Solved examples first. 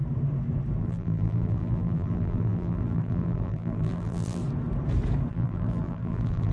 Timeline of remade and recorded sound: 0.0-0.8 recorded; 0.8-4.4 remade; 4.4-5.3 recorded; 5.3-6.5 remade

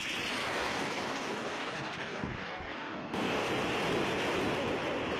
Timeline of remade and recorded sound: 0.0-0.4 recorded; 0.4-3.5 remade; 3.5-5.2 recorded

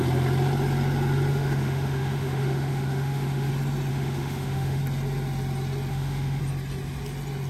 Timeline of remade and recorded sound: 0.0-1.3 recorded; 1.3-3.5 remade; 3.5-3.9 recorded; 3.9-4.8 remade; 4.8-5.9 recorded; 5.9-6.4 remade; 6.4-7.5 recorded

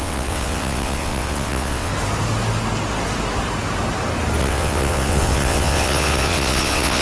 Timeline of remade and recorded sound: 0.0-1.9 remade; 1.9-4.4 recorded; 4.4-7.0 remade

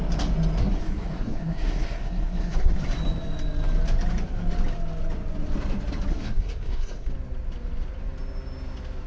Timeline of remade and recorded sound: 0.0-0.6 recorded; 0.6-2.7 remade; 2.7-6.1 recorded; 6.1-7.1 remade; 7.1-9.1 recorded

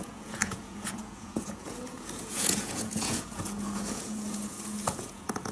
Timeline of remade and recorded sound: 0.0-5.5 remade

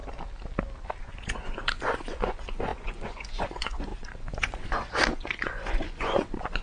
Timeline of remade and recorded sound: 0.0-1.0 recorded; 1.0-6.6 remade